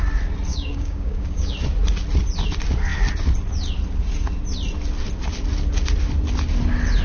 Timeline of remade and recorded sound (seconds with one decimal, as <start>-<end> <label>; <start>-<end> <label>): 0.0-0.5 recorded; 0.5-1.5 remade; 1.5-7.0 recorded